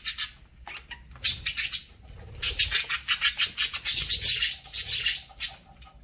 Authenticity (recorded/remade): recorded